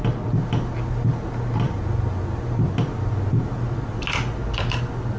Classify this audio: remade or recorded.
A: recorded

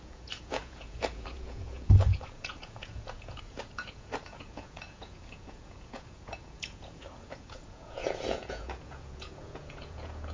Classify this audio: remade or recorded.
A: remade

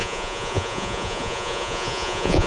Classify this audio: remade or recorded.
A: remade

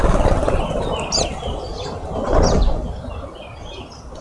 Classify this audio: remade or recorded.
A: recorded